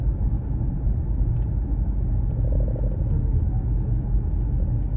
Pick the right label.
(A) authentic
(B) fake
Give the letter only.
A